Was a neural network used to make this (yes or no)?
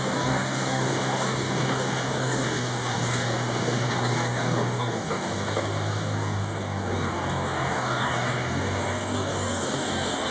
yes